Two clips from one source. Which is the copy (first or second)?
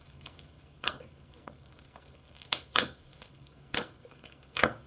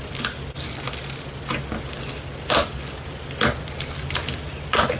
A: first